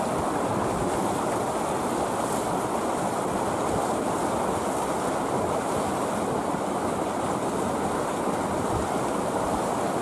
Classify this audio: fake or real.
real